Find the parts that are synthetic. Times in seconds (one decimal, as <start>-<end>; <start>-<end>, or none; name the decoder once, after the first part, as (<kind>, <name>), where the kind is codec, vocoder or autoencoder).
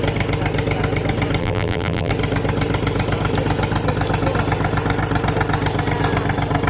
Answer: 1.4-2.1 (vocoder, BigVGAN v2)